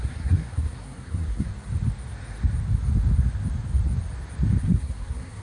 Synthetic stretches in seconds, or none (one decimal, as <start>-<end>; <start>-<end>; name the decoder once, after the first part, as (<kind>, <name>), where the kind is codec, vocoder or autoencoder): 0.0-1.5 (codec, SNAC); 4.6-5.4